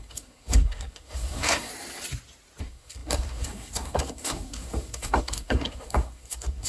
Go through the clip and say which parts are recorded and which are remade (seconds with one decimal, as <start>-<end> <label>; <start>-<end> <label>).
0.0-1.7 remade; 1.7-2.6 recorded; 2.6-6.7 remade